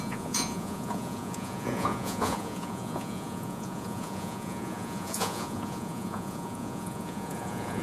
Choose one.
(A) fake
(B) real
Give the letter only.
A